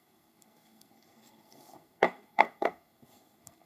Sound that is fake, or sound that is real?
fake